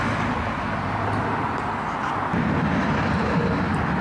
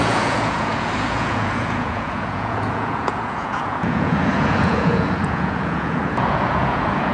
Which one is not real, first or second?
second